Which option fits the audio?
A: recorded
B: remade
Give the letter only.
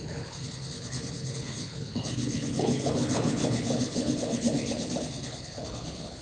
B